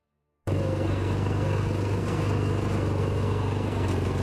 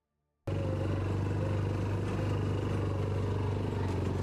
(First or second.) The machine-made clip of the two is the first